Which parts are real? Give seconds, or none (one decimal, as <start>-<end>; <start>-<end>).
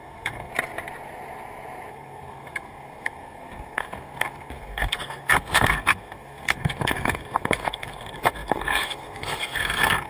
0.5-1.9